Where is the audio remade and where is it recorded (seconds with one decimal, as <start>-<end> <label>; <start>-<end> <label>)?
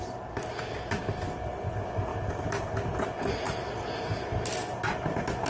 0.0-5.5 recorded